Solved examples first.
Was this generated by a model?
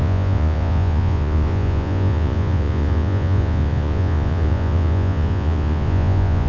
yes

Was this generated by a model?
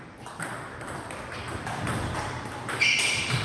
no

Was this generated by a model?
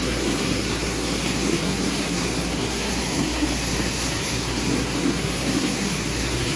yes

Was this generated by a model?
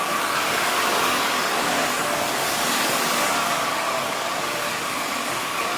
yes